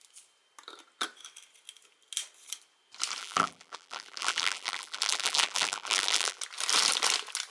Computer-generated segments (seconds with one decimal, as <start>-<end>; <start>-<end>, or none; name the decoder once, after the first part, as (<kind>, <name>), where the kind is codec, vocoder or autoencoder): 3.2-6.4 (vocoder, BigVGAN v2)

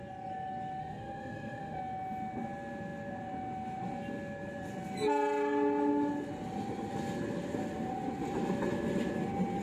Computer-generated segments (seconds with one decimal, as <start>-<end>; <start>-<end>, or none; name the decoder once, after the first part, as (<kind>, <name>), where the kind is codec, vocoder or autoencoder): 0.8-1.8 (autoencoder, DAC-VAE)